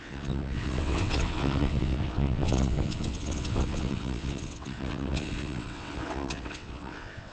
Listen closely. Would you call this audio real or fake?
fake